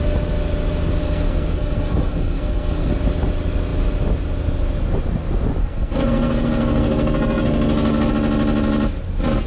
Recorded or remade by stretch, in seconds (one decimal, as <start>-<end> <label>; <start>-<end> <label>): 0.0-1.0 recorded; 1.0-2.9 remade; 2.9-5.6 recorded; 5.6-8.1 remade; 8.1-9.5 recorded